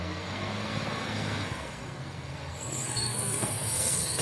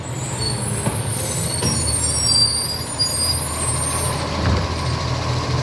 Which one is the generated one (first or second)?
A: first